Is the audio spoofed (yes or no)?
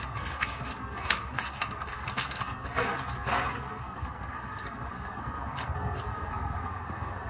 yes